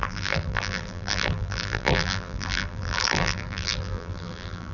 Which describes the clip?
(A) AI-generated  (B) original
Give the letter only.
A